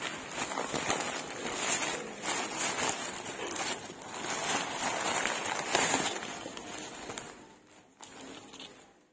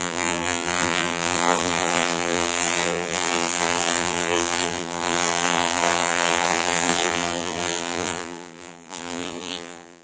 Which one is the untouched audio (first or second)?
first